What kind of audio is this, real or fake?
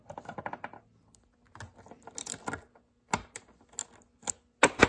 real